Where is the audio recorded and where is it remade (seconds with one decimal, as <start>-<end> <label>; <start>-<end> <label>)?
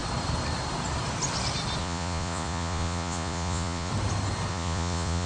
0.0-1.8 recorded; 1.8-3.9 remade; 3.9-4.5 recorded; 4.5-5.3 remade